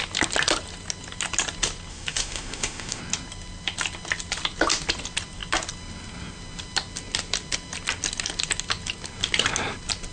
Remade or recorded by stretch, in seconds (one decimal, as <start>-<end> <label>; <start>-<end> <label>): 0.0-1.9 recorded; 1.9-3.0 remade; 3.0-10.1 recorded